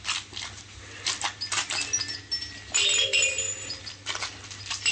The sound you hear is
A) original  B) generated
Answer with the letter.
B